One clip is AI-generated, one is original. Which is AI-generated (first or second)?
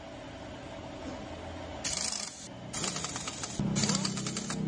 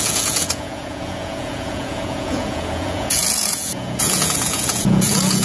second